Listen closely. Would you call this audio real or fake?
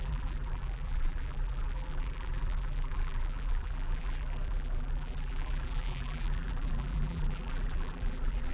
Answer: fake